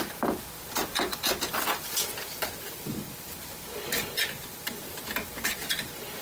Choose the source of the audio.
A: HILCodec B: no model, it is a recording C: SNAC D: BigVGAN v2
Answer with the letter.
B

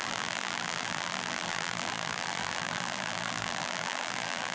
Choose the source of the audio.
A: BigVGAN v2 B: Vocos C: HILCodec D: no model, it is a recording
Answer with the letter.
A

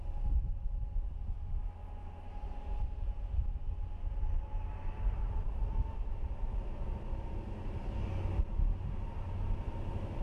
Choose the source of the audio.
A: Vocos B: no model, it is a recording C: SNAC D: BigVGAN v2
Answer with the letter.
B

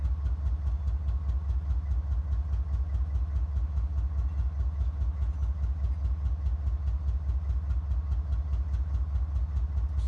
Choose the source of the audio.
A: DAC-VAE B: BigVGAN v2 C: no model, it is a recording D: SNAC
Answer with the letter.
C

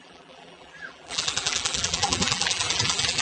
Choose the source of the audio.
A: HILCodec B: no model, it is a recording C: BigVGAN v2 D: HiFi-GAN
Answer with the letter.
C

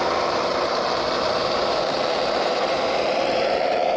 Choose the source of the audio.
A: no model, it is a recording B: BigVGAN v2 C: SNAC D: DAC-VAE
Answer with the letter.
B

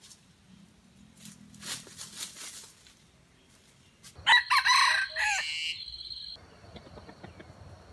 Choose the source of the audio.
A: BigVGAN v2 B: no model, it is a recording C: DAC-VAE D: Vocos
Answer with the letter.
B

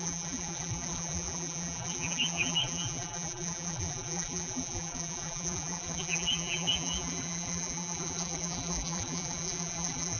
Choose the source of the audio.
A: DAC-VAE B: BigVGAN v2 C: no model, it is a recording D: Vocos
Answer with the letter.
B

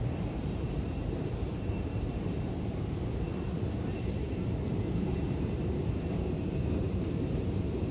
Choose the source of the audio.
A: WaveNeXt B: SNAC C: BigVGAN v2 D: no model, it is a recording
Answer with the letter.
C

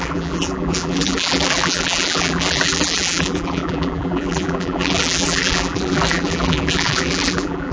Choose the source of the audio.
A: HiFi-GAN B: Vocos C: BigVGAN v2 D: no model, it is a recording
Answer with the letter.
C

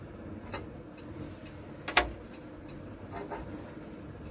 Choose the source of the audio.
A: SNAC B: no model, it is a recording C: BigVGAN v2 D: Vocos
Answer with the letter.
B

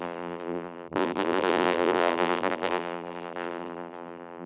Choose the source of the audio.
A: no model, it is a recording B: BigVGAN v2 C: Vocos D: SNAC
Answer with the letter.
B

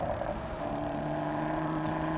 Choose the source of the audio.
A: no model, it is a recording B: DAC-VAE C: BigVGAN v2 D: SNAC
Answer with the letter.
C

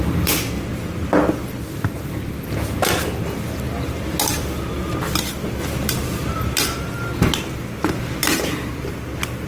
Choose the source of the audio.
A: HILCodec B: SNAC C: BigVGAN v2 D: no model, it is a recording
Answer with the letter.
D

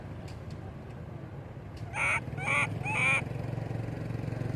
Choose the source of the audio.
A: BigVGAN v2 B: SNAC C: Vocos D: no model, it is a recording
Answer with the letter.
D